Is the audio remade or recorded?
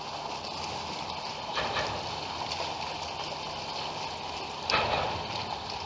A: recorded